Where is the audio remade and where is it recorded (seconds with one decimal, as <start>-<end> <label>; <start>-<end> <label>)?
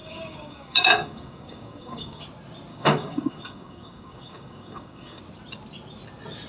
0.0-2.2 remade; 2.2-2.7 recorded; 2.7-5.2 remade; 5.2-6.5 recorded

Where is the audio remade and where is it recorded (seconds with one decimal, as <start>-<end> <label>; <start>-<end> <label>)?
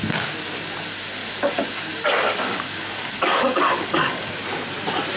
0.0-1.2 recorded; 1.2-4.3 remade; 4.3-5.2 recorded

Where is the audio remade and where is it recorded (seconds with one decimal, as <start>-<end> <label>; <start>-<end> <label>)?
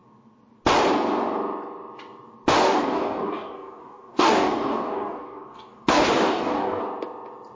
0.0-2.6 recorded; 2.6-6.8 remade; 6.8-7.5 recorded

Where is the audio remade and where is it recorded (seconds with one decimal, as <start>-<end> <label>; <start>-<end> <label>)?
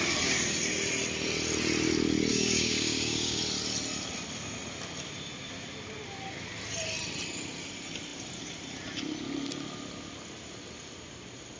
0.0-2.3 recorded; 2.3-3.4 remade; 3.4-11.6 recorded